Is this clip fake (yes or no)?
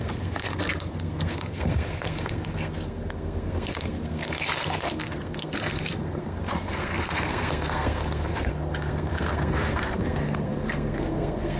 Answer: yes